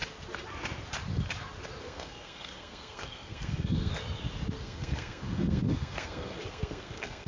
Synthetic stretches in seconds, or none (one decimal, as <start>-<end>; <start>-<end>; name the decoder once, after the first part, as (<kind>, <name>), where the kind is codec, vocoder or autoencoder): 1.8-3.9 (codec, SNAC); 4.6-7.3

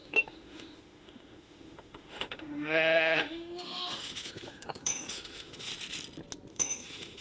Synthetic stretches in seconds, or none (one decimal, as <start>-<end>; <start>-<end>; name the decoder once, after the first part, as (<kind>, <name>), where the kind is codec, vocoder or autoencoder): 0.0-5.7 (autoencoder, DAC-VAE); 6.5-7.2